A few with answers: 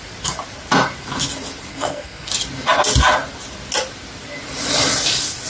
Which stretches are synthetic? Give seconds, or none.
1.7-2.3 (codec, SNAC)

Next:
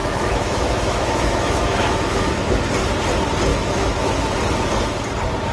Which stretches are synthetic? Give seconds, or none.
0.0-2.5 (autoencoder, DAC-VAE); 3.5-4.2

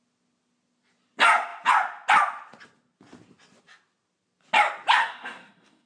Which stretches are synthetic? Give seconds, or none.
5.0-5.9 (codec, DAC)